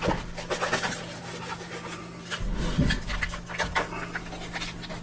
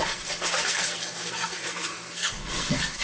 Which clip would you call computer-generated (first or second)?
second